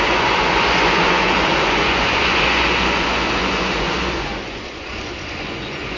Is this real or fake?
fake